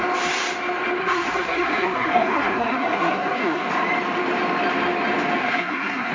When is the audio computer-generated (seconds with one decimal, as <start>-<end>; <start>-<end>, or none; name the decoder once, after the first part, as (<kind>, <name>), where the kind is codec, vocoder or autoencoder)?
1.0-3.7 (codec, SNAC); 5.4-6.1